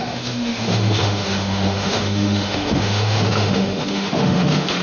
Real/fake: fake